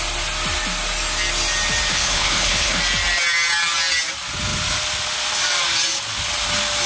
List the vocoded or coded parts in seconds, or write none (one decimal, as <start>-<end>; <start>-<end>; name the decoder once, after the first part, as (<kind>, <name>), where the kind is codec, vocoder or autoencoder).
1.9-2.8 (codec, HILCodec)